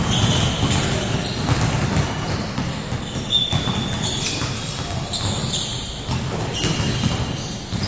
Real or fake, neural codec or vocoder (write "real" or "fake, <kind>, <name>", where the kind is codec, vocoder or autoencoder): real